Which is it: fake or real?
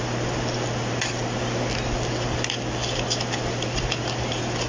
real